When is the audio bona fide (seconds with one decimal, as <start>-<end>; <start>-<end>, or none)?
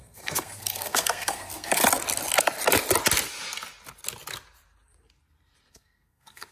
1.8-5.7